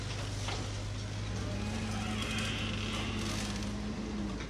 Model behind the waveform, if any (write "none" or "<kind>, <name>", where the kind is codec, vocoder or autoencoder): none